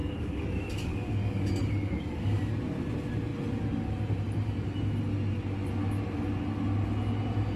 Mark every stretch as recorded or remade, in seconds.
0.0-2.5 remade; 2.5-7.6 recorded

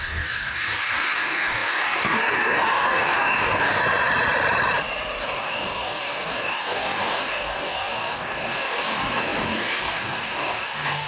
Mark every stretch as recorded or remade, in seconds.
0.0-3.8 remade; 3.8-5.2 recorded; 5.2-11.1 remade